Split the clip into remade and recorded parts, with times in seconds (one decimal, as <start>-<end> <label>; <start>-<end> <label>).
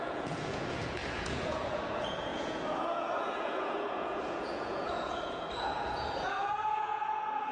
0.0-7.5 remade